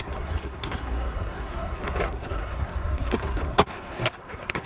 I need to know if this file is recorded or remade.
remade